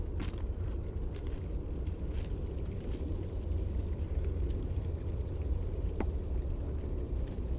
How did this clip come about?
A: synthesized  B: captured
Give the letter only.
A